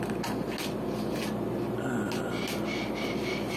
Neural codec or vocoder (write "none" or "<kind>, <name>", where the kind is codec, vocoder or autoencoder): none